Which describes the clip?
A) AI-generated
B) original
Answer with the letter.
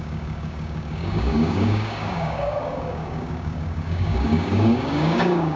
A